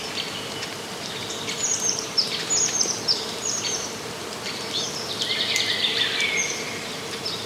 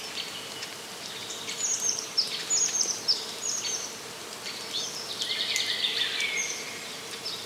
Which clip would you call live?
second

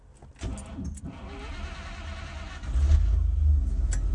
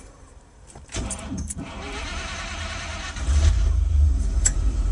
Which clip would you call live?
first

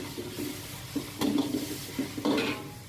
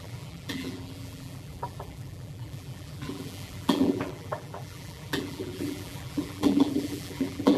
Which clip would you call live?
first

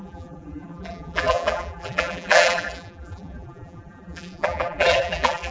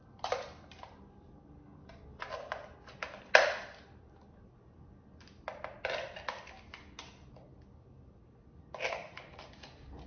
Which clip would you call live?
second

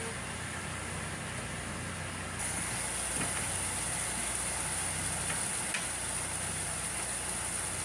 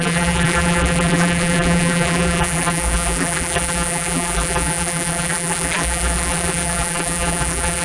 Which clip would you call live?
first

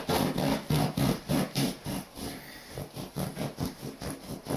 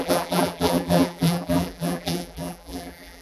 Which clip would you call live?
first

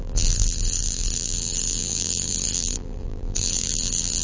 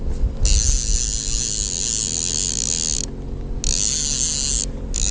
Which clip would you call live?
second